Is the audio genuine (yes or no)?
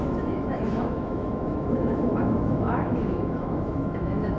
no